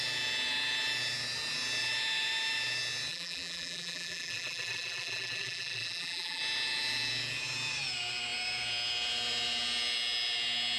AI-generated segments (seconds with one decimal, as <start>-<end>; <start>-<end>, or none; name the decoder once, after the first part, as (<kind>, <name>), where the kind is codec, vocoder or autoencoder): 3.1-6.4 (vocoder, BigVGAN v2)